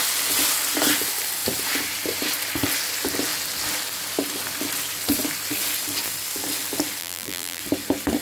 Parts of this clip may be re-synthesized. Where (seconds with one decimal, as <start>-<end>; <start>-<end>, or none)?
7.0-7.6